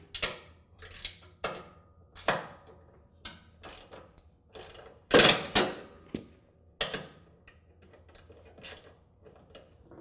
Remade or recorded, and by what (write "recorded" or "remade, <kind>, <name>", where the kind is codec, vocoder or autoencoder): recorded